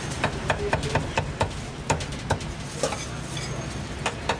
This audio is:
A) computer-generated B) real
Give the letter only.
B